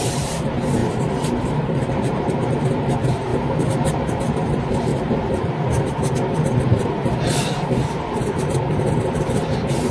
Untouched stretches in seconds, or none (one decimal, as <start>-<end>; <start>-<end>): 0.8-1.4